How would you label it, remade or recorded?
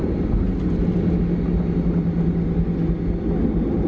recorded